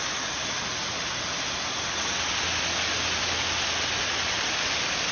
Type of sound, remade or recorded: recorded